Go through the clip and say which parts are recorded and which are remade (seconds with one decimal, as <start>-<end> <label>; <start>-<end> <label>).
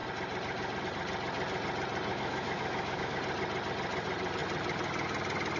0.0-2.1 recorded; 2.1-3.2 remade; 3.2-5.6 recorded